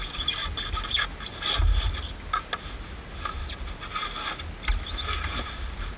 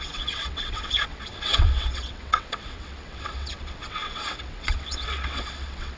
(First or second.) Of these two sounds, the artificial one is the second